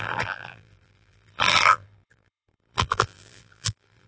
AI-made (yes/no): yes